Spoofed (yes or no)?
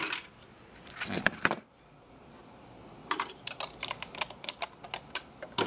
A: no